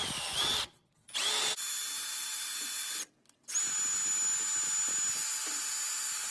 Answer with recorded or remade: recorded